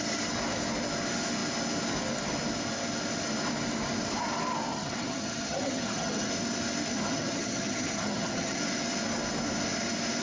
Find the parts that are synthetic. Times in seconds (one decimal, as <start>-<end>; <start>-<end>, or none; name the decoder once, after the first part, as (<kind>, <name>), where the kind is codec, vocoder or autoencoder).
4.7-6.3 (vocoder, HiFi-GAN); 6.9-8.6

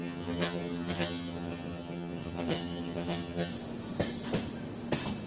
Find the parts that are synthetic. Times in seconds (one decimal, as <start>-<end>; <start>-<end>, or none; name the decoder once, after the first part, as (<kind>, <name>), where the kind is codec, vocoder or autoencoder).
0.0-3.5 (vocoder, HiFi-GAN)

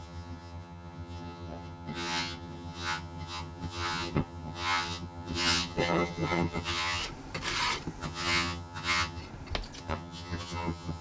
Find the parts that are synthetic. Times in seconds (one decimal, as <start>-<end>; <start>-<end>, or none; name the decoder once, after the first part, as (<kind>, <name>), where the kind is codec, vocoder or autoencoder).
0.0-7.0 (vocoder, HiFi-GAN); 8.0-9.2; 9.8-11.0